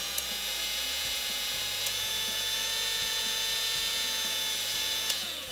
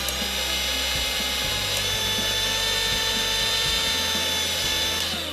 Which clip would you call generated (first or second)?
first